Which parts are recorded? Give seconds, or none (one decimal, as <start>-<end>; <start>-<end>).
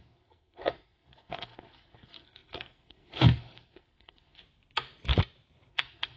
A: 4.4-5.7